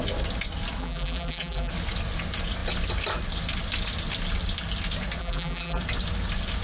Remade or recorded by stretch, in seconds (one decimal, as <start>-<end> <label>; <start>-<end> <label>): 0.0-0.8 recorded; 0.8-1.7 remade; 1.7-5.2 recorded; 5.2-5.8 remade; 5.8-6.6 recorded